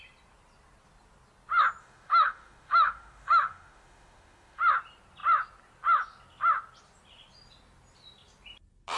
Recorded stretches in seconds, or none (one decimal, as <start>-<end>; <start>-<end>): 0.0-1.8; 4.6-9.0